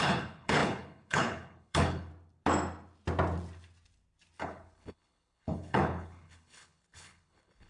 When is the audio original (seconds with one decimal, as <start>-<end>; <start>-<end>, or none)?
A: 2.1-4.4